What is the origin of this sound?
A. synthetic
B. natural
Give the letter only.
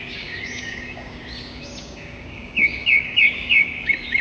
A